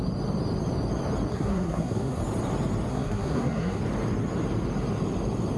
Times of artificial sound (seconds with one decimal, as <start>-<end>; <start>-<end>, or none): 1.3-2.2; 2.9-3.8